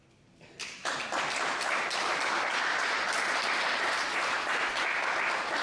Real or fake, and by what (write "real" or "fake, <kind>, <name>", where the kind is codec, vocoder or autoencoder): real